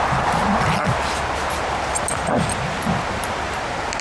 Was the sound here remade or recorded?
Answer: recorded